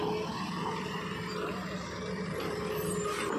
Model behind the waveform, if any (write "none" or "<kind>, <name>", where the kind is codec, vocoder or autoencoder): none